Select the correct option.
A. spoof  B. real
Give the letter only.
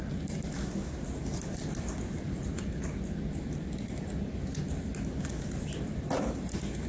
B